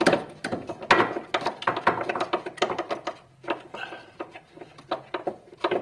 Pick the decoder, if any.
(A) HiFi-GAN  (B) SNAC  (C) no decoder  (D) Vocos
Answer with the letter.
C